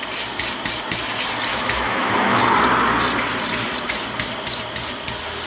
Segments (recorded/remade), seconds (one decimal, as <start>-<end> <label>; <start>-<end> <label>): 0.0-1.5 recorded; 1.5-2.4 remade; 2.4-5.5 recorded

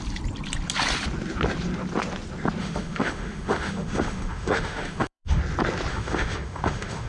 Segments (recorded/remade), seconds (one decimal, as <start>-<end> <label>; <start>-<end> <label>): 0.0-2.6 recorded; 2.6-5.4 remade; 5.4-5.9 recorded; 5.9-7.1 remade

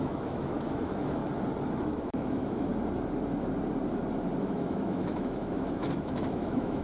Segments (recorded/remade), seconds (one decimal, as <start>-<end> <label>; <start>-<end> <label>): 0.0-1.2 remade; 1.2-1.7 recorded; 1.7-2.7 remade; 2.7-4.4 recorded; 4.4-6.8 remade

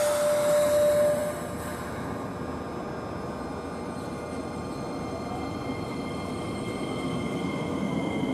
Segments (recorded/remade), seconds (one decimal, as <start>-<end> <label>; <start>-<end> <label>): 0.0-8.3 recorded

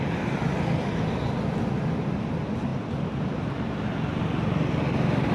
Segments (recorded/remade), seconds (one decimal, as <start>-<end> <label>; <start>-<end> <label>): 0.0-5.3 recorded

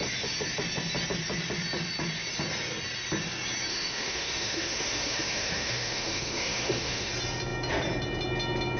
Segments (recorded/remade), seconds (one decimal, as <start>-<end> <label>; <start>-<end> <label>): 0.0-3.7 recorded; 3.7-7.1 remade; 7.1-8.8 recorded

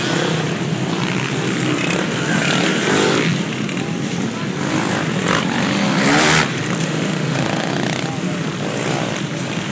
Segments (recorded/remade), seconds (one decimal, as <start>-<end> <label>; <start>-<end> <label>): 0.0-6.8 recorded; 6.8-7.7 remade; 7.7-9.7 recorded

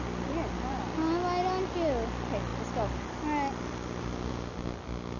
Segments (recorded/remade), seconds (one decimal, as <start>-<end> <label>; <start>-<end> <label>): 0.0-5.2 recorded